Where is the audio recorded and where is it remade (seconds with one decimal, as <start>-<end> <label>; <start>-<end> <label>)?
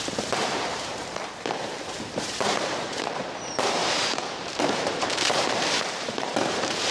0.0-6.9 remade